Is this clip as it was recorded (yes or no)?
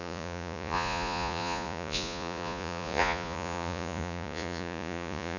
no